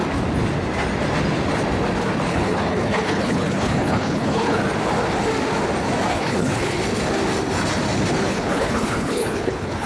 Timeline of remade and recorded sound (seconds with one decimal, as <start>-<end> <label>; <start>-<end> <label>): 0.0-2.3 recorded; 2.3-4.6 remade; 4.6-6.1 recorded; 6.1-6.8 remade; 6.8-8.3 recorded; 8.3-9.9 remade